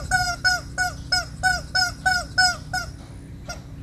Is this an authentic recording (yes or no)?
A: yes